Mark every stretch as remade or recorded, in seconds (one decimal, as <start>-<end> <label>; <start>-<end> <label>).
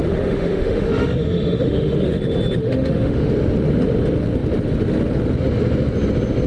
0.0-2.2 remade; 2.2-2.6 recorded; 2.6-3.3 remade; 3.3-6.5 recorded